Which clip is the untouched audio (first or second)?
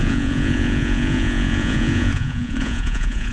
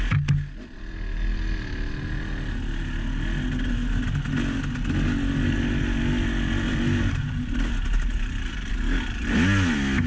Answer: second